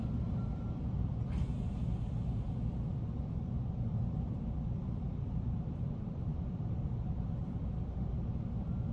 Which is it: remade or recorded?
remade